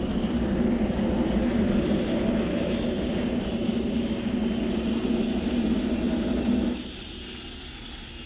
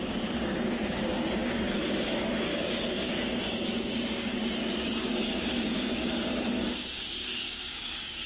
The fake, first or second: second